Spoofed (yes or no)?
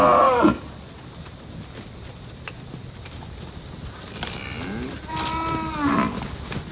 no